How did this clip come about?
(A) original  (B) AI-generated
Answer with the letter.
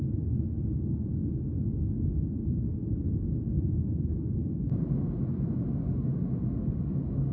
B